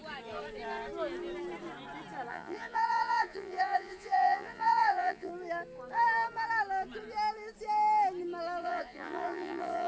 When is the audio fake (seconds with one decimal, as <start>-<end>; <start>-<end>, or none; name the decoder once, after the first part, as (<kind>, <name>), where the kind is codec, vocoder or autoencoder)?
2.3-5.3 (vocoder, Vocos); 8.6-9.9